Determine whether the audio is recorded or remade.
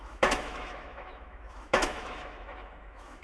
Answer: remade